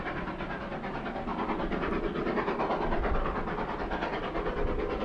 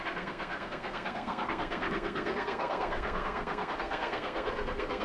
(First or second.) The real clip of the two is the first